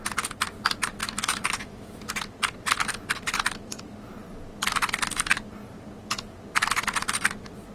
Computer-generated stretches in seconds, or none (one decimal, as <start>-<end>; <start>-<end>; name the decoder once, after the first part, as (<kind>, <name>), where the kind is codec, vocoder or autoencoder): 1.0-2.0 (autoencoder, DAC-VAE)